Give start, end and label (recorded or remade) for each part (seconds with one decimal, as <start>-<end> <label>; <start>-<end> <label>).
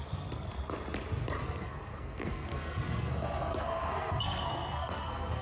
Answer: 0.0-0.5 remade; 0.5-1.4 recorded; 1.4-5.4 remade